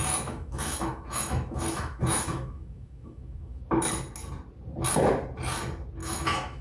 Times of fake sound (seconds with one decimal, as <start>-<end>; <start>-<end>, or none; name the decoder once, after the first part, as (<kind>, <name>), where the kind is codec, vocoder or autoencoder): 0.0-3.6 (autoencoder, DAC-VAE); 6.0-6.6